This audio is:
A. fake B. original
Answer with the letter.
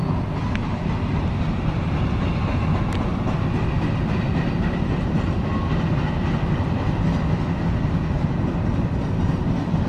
B